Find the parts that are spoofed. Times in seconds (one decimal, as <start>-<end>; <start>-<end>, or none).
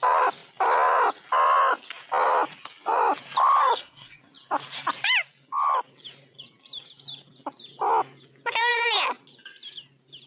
3.6-4.2